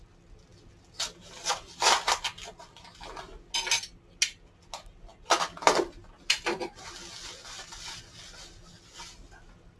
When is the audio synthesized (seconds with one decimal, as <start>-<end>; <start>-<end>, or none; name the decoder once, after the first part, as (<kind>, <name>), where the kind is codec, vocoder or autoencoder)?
none